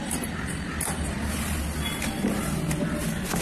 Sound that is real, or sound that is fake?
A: real